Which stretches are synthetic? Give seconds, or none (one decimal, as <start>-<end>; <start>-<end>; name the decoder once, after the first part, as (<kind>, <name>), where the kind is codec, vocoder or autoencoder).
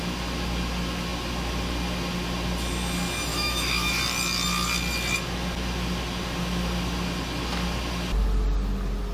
3.3-4.0 (autoencoder, DAC-VAE)